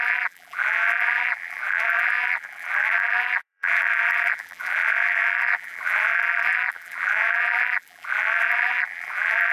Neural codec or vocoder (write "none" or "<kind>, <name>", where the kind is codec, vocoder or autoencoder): vocoder, BigVGAN v2